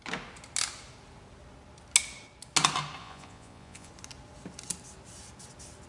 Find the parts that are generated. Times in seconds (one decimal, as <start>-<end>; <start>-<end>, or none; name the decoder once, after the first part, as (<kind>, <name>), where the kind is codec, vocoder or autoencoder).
3.0-3.9 (vocoder, Vocos)